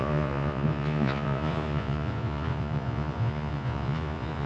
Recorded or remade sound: remade